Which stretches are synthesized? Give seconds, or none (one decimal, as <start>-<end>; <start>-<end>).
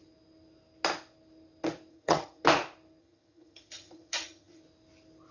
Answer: 1.9-2.4; 3.0-4.6